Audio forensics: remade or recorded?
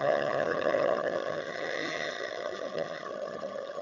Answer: remade